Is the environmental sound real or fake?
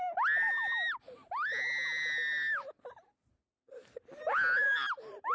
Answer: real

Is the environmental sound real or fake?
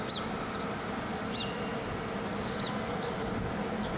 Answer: real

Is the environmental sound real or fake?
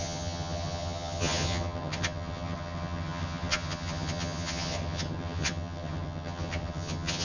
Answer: fake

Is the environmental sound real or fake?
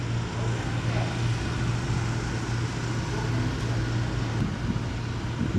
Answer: real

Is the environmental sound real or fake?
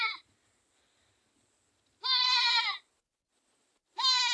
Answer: real